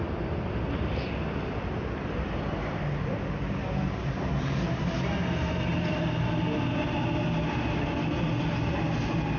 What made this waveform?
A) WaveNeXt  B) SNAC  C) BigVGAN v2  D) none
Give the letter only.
D